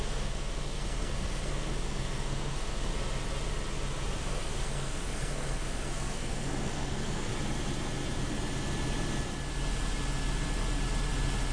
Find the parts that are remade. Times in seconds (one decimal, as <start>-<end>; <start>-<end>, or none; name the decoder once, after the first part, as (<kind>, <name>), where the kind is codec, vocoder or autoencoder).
0.0-2.9 (codec, SNAC); 4.2-7.3